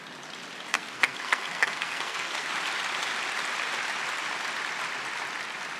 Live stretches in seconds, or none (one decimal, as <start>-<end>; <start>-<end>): 0.0-0.7; 2.5-5.8